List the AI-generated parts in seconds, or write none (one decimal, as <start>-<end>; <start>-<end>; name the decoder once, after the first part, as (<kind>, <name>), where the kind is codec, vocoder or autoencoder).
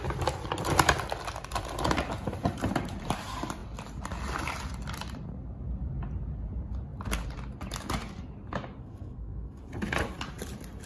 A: 8.8-9.6 (codec, SNAC)